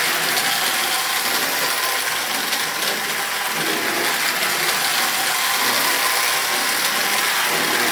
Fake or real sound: real